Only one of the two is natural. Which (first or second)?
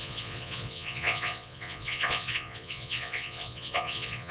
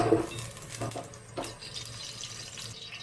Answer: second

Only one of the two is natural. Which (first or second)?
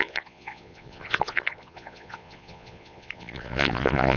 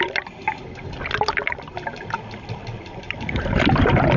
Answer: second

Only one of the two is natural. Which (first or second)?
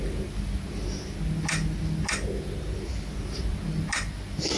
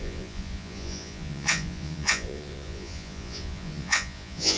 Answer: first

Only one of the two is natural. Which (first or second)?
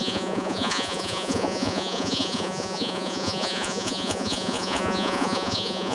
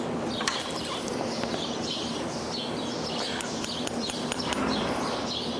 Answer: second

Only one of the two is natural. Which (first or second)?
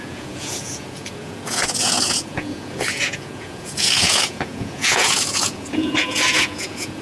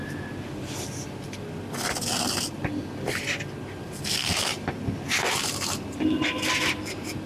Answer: second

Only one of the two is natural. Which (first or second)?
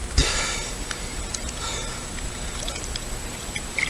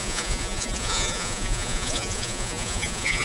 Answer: first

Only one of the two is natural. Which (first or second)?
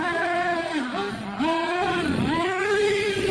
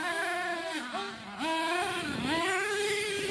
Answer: second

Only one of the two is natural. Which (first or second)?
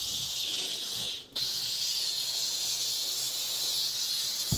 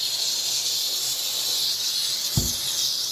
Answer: second